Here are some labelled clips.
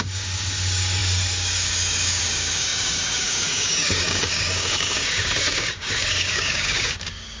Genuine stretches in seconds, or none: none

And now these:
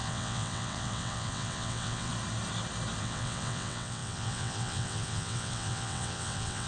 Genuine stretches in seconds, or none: 2.1-3.0

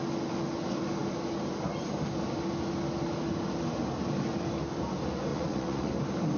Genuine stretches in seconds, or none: 0.0-5.3; 5.9-6.4